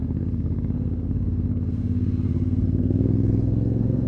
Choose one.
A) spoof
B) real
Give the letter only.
A